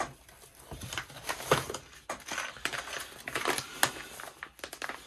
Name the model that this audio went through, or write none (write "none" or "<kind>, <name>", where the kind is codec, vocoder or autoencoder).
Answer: none